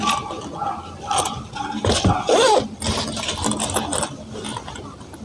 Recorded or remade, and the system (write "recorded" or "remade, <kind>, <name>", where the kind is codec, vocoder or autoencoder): recorded